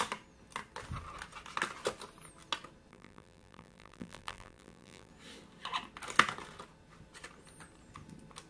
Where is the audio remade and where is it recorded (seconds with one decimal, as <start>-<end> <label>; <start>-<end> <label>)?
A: 0.0-2.9 recorded; 2.9-5.1 remade; 5.1-8.5 recorded